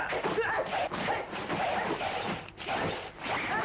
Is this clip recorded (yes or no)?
yes